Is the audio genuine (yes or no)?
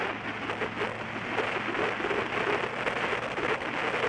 yes